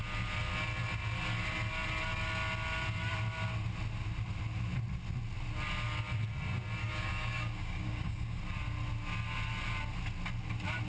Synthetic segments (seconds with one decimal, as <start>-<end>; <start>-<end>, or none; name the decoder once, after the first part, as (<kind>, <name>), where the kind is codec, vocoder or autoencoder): 6.8-8.4 (codec, DAC)